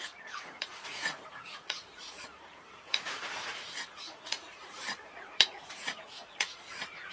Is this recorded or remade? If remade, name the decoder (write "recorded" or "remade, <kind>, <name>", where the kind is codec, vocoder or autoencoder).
remade, vocoder, Vocos